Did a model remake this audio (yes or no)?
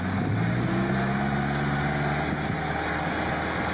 no